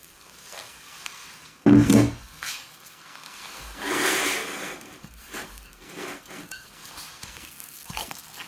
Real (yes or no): no